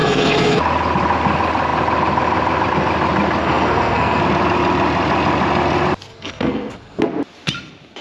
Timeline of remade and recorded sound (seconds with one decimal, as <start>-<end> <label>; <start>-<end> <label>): 0.0-0.6 remade; 0.6-3.4 recorded; 3.4-4.2 remade; 4.2-6.1 recorded; 6.1-7.0 remade; 7.0-8.0 recorded